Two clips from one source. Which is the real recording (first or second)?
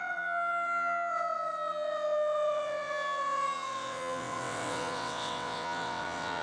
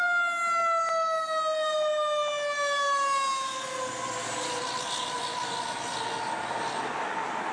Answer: second